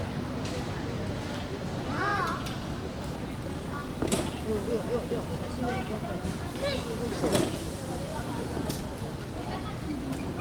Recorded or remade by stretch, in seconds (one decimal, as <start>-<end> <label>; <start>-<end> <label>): 0.0-10.4 recorded